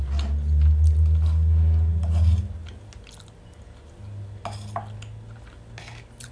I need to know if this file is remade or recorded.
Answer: recorded